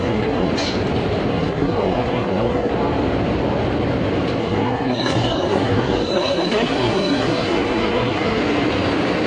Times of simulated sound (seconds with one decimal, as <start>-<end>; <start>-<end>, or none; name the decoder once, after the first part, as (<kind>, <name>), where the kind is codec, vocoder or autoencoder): 0.0-0.5 (codec, SNAC); 1.3-2.7; 4.4-8.4